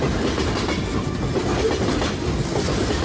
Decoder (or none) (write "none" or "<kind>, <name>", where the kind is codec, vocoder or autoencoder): none